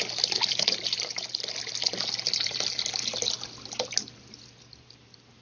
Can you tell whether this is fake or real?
real